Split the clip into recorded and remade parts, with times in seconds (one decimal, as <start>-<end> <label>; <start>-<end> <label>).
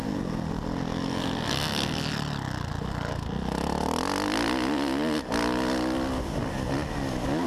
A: 0.0-7.5 recorded